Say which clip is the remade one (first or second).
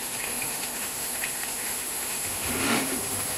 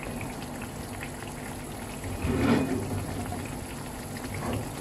first